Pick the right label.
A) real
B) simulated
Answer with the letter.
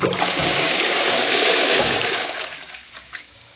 B